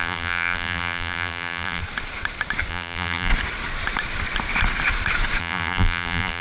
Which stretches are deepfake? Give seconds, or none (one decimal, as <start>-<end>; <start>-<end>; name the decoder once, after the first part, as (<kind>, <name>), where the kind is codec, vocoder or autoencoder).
0.0-1.8 (vocoder, BigVGAN v2); 2.7-3.3; 5.4-6.4